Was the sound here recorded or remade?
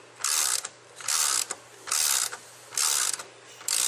recorded